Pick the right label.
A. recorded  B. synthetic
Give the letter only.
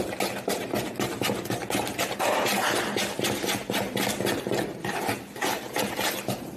A